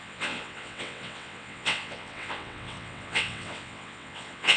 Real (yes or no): no